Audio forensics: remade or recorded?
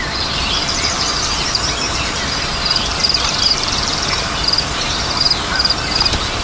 remade